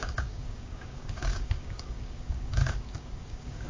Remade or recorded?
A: remade